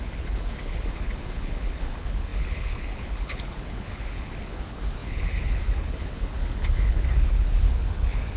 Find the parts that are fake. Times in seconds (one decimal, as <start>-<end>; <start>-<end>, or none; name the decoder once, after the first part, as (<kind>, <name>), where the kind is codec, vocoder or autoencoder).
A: 0.0-8.4 (codec, HILCodec)